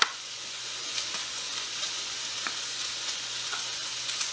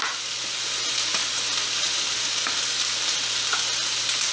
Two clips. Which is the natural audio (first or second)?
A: second